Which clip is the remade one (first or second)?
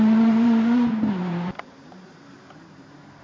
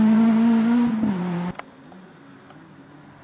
first